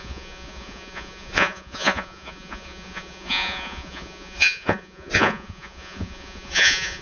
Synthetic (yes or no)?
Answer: yes